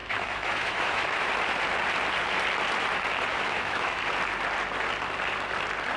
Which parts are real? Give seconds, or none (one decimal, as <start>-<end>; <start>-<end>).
1.3-3.3; 4.0-6.0